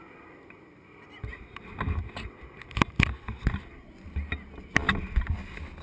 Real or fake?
real